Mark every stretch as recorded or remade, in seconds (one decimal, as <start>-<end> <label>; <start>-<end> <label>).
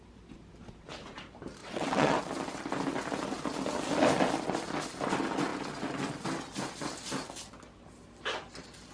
0.0-1.6 recorded; 1.6-2.2 remade; 2.2-8.9 recorded